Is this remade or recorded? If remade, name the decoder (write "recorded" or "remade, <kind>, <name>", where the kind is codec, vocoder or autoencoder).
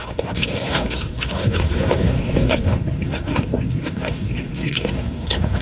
remade, codec, SNAC